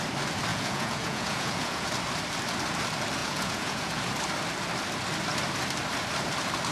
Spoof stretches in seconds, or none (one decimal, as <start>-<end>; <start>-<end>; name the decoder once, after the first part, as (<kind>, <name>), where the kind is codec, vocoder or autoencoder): 0.5-1.9 (vocoder, Vocos); 3.2-4.1